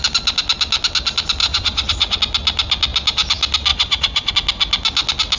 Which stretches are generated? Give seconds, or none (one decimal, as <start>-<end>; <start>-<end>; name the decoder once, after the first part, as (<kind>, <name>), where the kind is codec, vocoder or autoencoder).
1.4-2.2 (vocoder, Vocos); 3.7-4.3